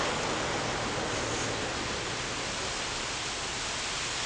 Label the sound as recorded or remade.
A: recorded